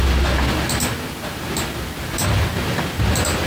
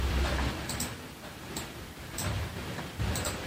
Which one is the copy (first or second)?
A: second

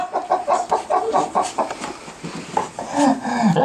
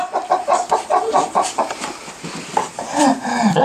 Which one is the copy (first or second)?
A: second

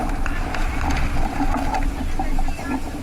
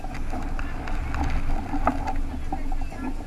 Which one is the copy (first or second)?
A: first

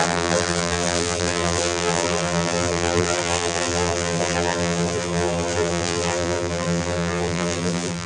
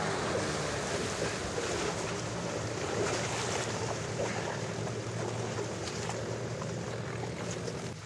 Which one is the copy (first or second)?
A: first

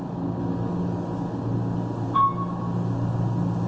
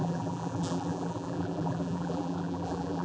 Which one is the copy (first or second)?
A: second